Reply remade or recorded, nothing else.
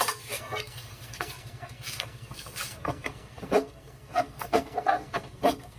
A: remade